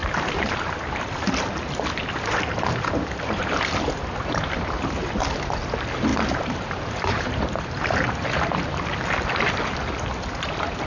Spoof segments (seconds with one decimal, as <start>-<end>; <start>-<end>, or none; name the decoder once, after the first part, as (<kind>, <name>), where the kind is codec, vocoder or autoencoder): 0.0-5.1 (vocoder, BigVGAN v2); 6.1-8.5